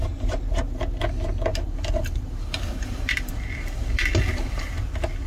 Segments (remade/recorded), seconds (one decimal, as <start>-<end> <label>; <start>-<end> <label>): 0.0-1.5 recorded; 1.5-4.7 remade; 4.7-5.3 recorded

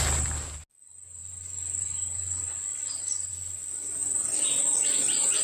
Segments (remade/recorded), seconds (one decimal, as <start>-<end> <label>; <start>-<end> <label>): 0.0-5.4 recorded

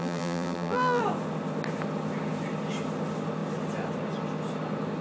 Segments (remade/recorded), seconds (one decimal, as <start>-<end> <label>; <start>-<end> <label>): 0.0-1.0 remade; 1.0-5.0 recorded